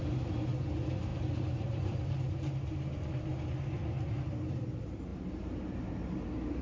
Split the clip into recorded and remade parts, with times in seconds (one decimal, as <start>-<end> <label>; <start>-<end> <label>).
0.0-3.3 remade; 3.3-4.3 recorded; 4.3-6.6 remade